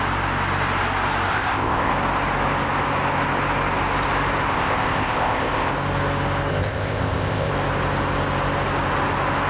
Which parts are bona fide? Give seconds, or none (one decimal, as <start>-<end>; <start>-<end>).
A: 0.0-1.3; 1.9-4.5; 5.7-6.5; 7.5-9.5